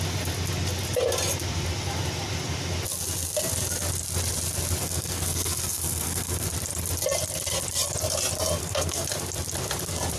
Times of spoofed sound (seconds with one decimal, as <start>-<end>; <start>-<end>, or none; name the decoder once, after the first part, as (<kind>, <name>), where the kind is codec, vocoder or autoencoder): 4.8-6.5 (codec, SNAC); 8.6-9.1